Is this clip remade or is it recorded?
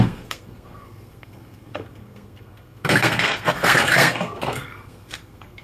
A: remade